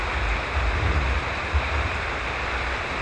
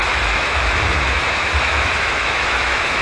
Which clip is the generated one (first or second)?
second